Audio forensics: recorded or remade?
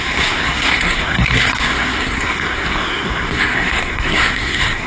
remade